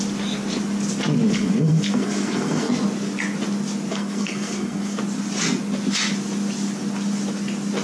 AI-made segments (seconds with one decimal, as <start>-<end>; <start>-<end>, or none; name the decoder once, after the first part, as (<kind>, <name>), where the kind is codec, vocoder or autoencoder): 1.3-2.7 (codec, SNAC); 3.9-5.0